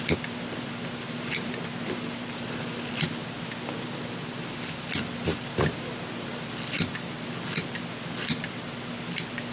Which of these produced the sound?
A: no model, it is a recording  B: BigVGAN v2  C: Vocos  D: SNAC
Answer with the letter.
B